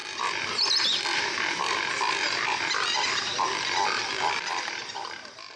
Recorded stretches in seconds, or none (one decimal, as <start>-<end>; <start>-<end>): 0.0-5.6

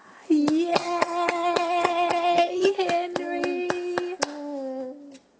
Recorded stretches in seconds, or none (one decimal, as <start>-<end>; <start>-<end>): 0.0-0.7; 2.7-5.4

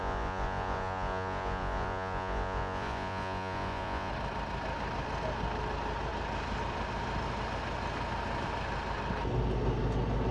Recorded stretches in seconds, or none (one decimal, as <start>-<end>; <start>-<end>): 4.1-10.3

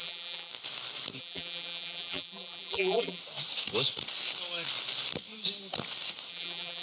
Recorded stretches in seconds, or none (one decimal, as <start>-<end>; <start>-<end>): 0.5-1.2; 3.2-6.3

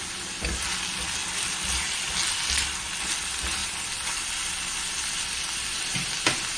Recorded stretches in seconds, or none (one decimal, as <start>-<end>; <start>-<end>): 0.0-6.6

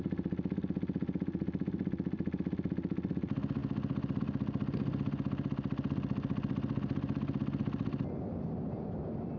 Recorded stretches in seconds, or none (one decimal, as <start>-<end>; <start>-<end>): 0.0-9.4

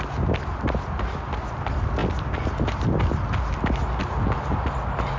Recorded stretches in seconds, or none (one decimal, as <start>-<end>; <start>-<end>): 0.0-5.2